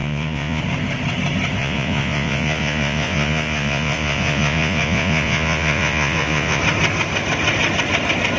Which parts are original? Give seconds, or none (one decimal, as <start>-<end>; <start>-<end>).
0.6-1.6; 6.6-8.4